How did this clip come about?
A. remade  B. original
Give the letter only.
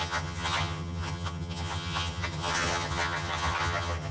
A